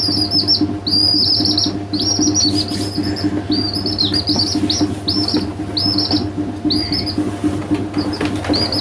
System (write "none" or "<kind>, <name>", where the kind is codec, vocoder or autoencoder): none